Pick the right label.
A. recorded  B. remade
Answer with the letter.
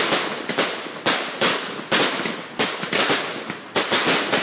A